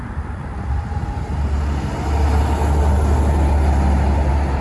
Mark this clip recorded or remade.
recorded